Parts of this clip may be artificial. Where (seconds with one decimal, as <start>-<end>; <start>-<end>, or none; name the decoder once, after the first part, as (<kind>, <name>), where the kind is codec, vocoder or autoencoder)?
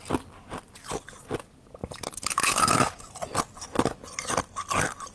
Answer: 1.8-3.4 (vocoder, BigVGAN v2)